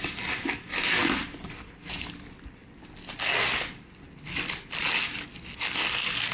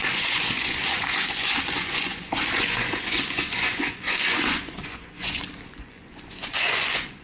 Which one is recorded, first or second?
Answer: first